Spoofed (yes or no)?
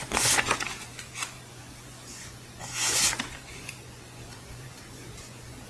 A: yes